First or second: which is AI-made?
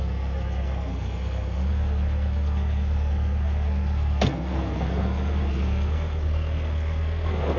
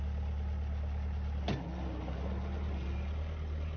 first